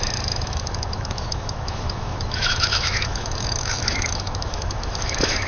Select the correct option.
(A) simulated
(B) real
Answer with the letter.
A